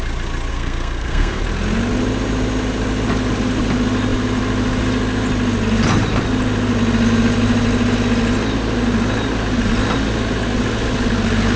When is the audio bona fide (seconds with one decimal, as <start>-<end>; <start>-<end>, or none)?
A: 0.0-0.5; 1.4-11.6